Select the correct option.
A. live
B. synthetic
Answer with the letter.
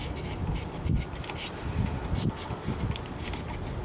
A